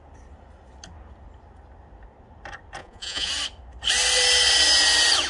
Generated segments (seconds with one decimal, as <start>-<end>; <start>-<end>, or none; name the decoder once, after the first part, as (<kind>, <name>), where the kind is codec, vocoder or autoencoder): 2.8-3.3 (vocoder, Vocos)